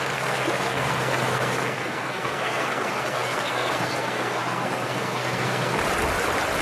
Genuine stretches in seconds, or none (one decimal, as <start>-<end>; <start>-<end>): 5.8-6.6